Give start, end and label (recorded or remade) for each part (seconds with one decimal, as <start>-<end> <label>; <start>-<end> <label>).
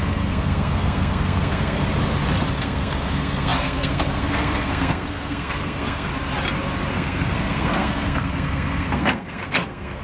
0.0-1.8 remade; 1.8-2.6 recorded; 2.6-6.1 remade; 6.1-6.9 recorded; 6.9-10.0 remade